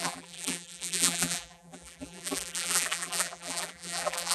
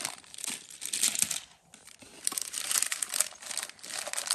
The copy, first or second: first